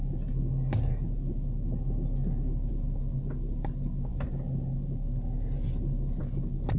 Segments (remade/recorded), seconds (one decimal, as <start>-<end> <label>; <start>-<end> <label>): 0.0-6.8 recorded